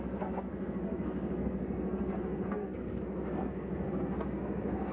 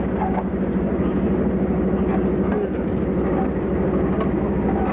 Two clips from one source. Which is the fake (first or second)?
first